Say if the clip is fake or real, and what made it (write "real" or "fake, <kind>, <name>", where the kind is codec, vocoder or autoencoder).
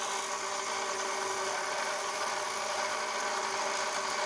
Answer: real